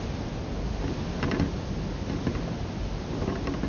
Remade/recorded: recorded